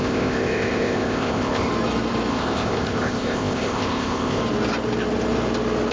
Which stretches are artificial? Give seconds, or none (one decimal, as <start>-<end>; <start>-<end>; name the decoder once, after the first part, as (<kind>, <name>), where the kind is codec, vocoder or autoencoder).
0.0-1.7 (codec, ZipCodec); 2.3-4.4